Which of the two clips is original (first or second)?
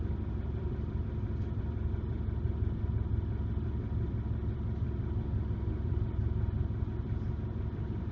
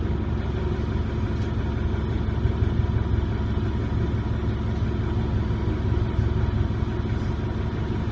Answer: second